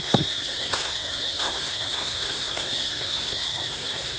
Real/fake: fake